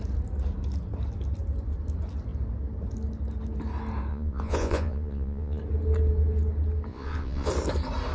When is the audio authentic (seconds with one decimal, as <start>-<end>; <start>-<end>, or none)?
0.0-4.1; 5.6-6.9; 7.5-8.1